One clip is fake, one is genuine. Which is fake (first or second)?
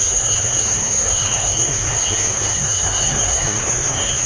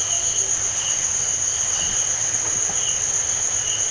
first